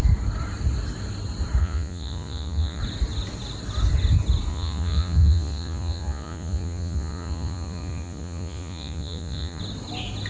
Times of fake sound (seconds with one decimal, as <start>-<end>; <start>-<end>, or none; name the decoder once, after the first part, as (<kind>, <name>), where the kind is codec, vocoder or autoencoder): 1.6-2.8 (vocoder, Vocos); 4.5-9.6